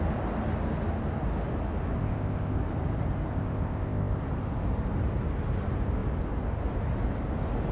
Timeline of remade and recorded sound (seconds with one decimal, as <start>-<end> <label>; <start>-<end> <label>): 0.0-2.0 recorded; 2.0-2.6 remade; 2.6-3.3 recorded; 3.3-4.2 remade; 4.2-7.7 recorded